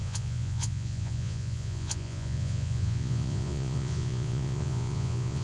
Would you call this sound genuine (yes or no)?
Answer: no